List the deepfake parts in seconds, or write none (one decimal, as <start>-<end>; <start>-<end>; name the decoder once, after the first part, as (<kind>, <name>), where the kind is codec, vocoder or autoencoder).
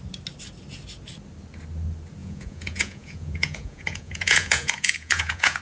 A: 2.2-5.6 (vocoder, Vocos)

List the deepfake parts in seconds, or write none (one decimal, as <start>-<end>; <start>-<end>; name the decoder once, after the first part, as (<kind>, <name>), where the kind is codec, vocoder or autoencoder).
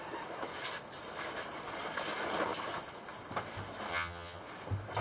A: 3.9-4.4 (vocoder, HiFi-GAN)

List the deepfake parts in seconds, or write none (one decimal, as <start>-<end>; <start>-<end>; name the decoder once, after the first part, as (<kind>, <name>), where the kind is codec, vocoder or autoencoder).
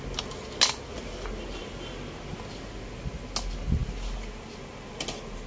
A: none